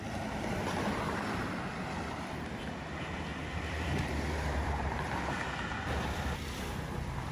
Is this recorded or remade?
remade